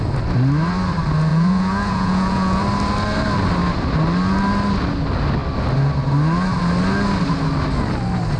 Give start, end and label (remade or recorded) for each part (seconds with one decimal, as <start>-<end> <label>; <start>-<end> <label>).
0.0-1.3 recorded; 1.3-2.6 remade; 2.6-8.4 recorded

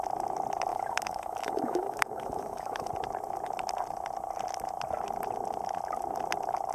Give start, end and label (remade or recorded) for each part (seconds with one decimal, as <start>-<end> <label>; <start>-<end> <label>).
0.0-0.7 recorded; 0.7-2.9 remade; 2.9-6.7 recorded